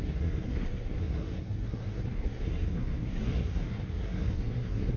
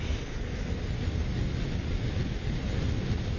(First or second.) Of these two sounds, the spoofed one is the first